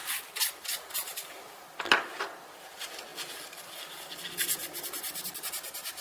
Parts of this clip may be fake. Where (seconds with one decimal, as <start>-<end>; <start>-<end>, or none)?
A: none